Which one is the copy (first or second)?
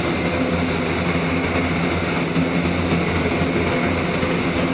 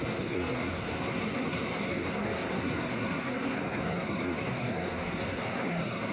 second